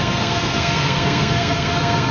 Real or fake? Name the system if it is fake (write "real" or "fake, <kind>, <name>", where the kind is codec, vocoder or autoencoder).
fake, codec, SNAC